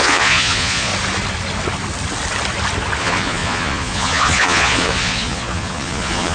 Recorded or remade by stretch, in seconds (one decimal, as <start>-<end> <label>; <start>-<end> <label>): 0.0-0.9 remade; 0.9-3.0 recorded; 3.0-6.3 remade